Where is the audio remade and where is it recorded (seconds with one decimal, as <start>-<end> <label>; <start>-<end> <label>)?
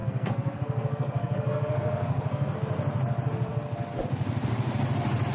0.0-2.5 remade; 2.5-5.3 recorded